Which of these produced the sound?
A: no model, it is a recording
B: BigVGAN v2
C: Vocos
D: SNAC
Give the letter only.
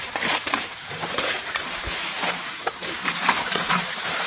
B